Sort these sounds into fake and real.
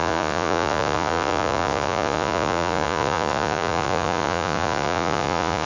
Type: fake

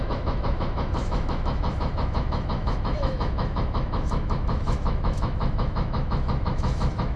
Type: fake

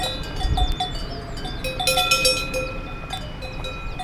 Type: real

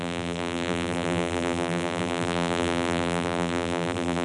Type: fake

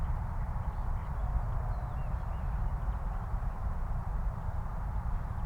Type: fake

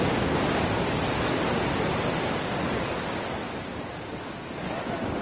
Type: real